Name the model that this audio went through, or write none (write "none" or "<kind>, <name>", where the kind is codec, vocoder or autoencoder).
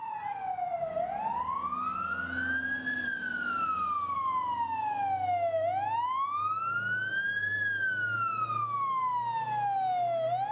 none